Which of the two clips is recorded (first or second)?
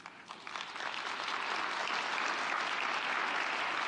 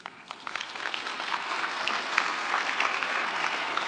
first